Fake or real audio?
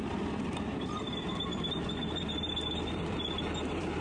real